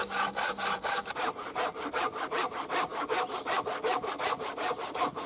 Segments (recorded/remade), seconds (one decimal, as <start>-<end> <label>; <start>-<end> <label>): 0.0-5.3 recorded